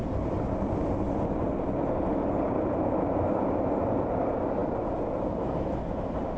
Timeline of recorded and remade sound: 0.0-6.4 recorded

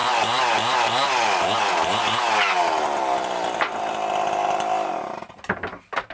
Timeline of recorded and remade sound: 0.0-6.1 recorded

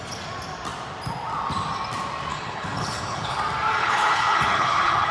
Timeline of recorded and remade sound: 0.0-2.3 recorded; 2.3-3.4 remade; 3.4-3.8 recorded; 3.8-5.1 remade

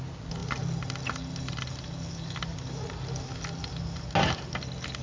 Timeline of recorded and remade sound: 0.0-5.0 recorded

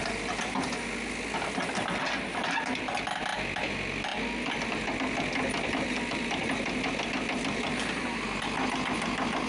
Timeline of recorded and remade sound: 0.0-9.5 recorded